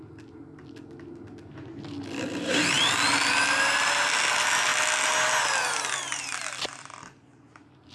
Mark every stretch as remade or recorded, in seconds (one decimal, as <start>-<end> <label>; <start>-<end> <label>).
0.0-7.9 recorded